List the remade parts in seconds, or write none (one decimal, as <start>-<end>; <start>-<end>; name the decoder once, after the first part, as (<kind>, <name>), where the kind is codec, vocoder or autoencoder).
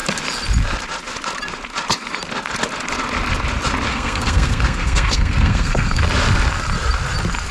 3.9-6.0 (codec, SNAC)